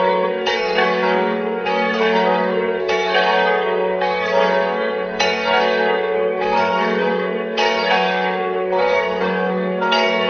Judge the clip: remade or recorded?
remade